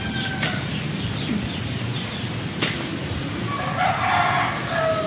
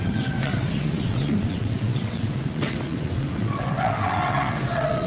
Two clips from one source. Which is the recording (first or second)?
first